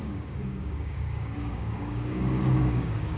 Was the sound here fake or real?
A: fake